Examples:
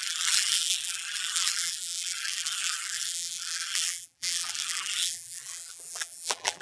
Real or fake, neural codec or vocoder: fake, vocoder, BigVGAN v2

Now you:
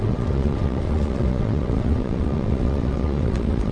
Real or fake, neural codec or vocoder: fake, vocoder, WaveNeXt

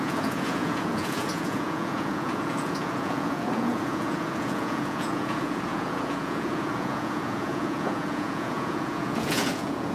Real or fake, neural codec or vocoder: fake, vocoder, Vocos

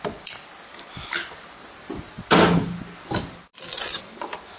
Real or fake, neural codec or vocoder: real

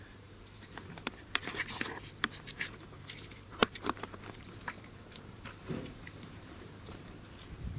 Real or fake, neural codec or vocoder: fake, vocoder, BigVGAN v2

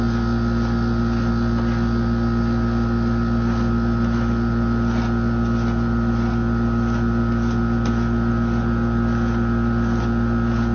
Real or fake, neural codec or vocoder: real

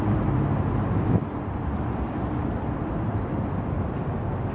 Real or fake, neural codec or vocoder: fake, vocoder, BigVGAN v2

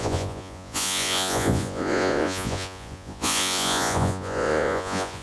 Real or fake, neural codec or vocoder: fake, vocoder, Vocos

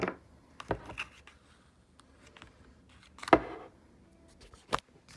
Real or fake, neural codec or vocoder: real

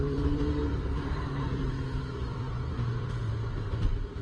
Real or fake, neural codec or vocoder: fake, vocoder, BigVGAN v2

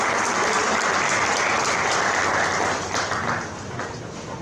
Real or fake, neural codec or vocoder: real